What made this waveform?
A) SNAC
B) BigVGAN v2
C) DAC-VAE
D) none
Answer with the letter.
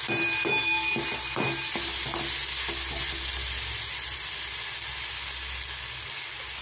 D